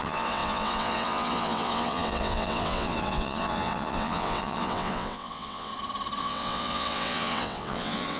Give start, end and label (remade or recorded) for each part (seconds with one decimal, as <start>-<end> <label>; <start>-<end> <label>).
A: 0.0-5.7 remade; 5.7-6.2 recorded; 6.2-8.2 remade